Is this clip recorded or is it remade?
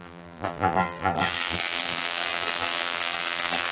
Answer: remade